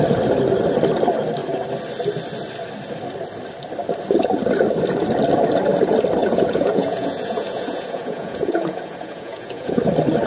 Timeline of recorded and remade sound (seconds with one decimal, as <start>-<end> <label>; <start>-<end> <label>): 0.0-6.2 recorded; 6.2-9.8 remade; 9.8-10.3 recorded